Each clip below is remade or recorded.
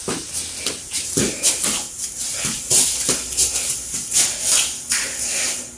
recorded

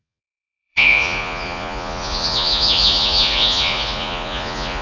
remade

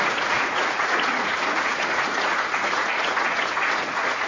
remade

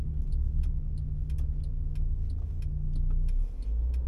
recorded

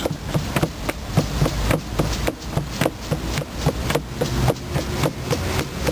recorded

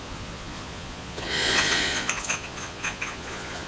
remade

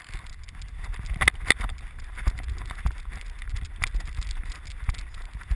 recorded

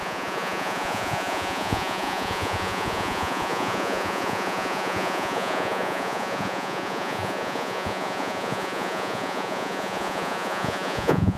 remade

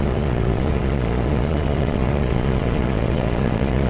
remade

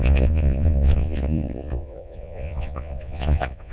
remade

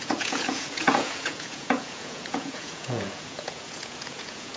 remade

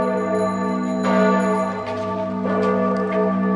recorded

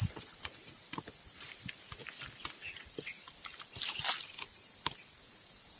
recorded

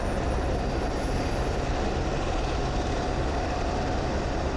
recorded